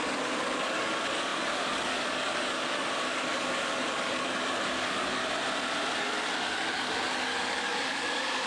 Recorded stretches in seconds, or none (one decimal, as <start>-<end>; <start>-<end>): 5.2-6.0